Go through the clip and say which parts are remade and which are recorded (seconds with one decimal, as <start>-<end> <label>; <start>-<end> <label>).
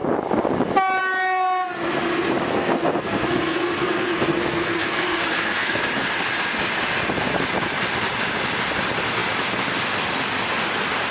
0.0-2.5 recorded; 2.5-5.8 remade; 5.8-11.1 recorded